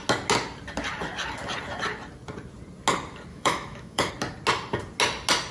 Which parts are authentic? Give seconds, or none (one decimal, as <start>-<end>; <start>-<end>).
0.0-3.3; 4.1-5.5